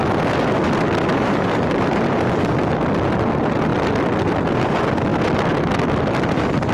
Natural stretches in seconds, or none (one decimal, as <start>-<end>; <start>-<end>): 0.0-1.1; 2.0-6.7

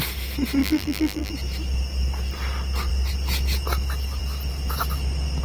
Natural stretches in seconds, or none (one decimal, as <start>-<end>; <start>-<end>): 0.0-0.6; 1.3-5.4

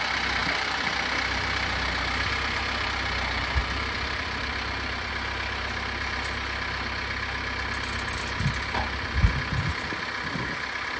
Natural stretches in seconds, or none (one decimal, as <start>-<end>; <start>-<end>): 0.0-0.4; 0.9-3.6; 5.1-11.0

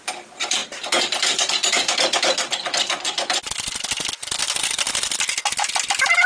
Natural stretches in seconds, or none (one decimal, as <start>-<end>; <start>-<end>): 0.0-6.3